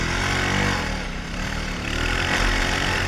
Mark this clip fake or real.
real